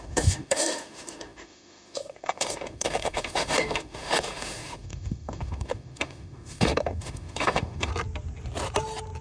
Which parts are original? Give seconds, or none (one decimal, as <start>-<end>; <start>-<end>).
7.9-9.2